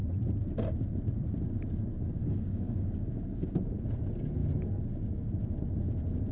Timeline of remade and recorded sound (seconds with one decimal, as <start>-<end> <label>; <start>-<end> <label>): 0.0-2.2 recorded; 2.2-3.8 remade; 3.8-6.3 recorded